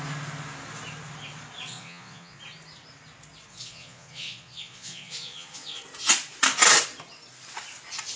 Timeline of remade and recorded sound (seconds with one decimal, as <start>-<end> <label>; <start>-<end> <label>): 0.0-1.7 recorded; 1.7-2.4 remade; 2.4-3.5 recorded; 3.5-5.8 remade; 5.8-8.2 recorded

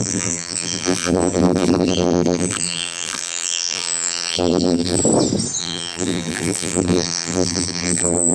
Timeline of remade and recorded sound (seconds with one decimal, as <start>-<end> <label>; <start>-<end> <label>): 0.0-5.0 remade; 5.0-5.6 recorded; 5.6-8.3 remade

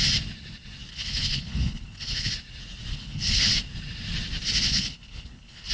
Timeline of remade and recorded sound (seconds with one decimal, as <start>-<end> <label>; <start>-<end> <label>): 0.0-0.9 recorded; 0.9-2.3 remade; 2.3-2.9 recorded; 2.9-3.5 remade; 3.5-4.7 recorded; 4.7-5.7 remade

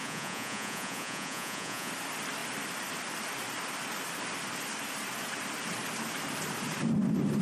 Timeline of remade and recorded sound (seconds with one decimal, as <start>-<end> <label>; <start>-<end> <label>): 0.0-1.9 remade; 1.9-7.4 recorded

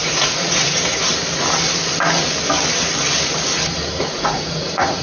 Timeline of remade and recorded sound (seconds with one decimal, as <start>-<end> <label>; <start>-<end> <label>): 0.0-1.1 remade; 1.1-4.0 recorded; 4.0-5.0 remade

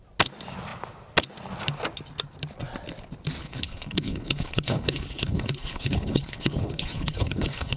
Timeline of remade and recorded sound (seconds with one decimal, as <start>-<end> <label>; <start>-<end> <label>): 0.0-3.4 recorded; 3.4-7.8 remade